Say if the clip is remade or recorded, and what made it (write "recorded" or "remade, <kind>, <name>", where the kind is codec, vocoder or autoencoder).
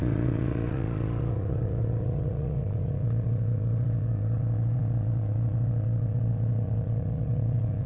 remade, vocoder, Vocos